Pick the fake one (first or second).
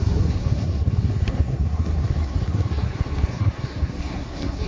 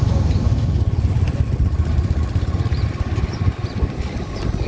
first